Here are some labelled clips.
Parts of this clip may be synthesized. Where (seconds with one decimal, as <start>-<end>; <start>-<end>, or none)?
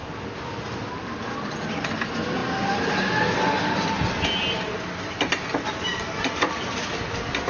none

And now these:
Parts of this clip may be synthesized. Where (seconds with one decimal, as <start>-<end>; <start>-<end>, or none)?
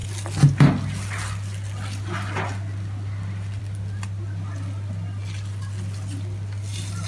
none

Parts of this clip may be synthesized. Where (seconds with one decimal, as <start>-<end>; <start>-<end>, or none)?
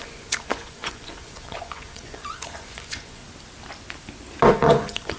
0.0-3.2; 4.5-5.2